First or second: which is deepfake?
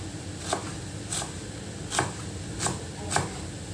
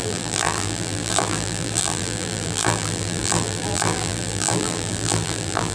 second